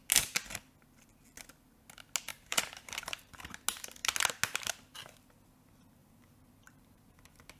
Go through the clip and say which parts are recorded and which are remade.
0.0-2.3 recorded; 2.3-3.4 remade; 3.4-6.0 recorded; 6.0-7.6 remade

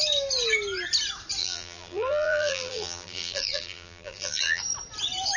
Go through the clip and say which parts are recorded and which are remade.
0.0-1.4 recorded; 1.4-4.6 remade; 4.6-5.4 recorded

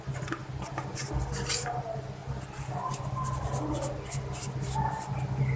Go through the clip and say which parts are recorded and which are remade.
0.0-5.6 remade

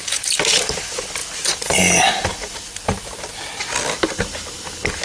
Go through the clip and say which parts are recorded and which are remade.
0.0-5.0 recorded

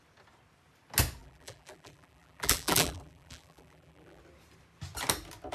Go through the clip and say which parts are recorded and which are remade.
0.0-1.2 recorded; 1.2-4.2 remade; 4.2-5.5 recorded

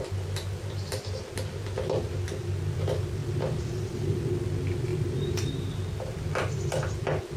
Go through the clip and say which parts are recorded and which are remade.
0.0-3.2 recorded; 3.2-4.3 remade; 4.3-4.9 recorded; 4.9-5.6 remade; 5.6-7.4 recorded